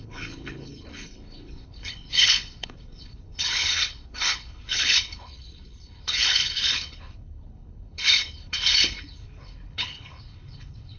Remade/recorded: remade